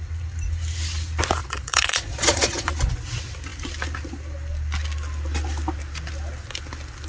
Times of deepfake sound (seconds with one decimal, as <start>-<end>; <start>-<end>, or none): 1.4-2.7